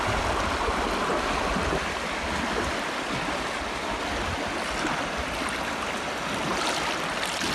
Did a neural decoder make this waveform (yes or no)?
no